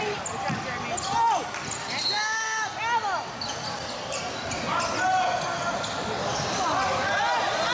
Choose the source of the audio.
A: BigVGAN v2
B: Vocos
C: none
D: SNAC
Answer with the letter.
C